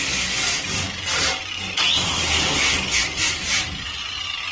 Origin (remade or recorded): recorded